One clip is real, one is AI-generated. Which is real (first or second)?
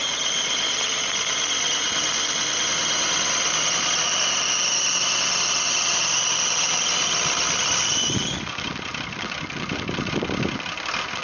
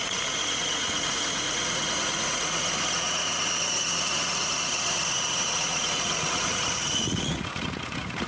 first